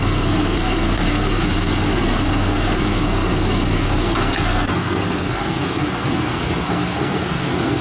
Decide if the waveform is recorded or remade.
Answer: remade